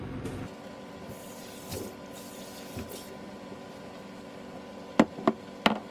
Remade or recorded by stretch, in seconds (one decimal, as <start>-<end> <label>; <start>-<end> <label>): 0.0-5.9 recorded